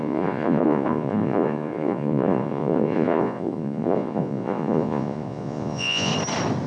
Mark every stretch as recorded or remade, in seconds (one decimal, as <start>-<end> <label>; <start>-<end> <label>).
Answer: 0.0-6.1 remade; 6.1-6.7 recorded